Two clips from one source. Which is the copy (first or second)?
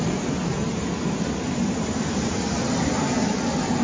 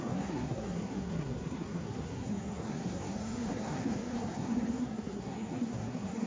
second